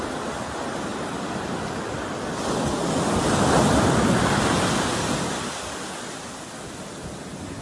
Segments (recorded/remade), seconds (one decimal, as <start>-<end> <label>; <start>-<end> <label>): 0.0-7.6 recorded